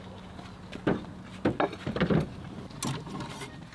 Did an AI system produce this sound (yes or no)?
no